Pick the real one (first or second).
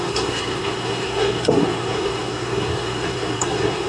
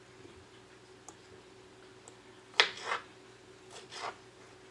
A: second